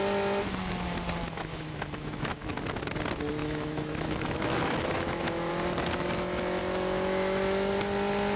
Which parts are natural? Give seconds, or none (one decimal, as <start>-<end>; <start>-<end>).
0.0-1.2; 2.6-3.4; 5.5-6.6; 7.7-8.4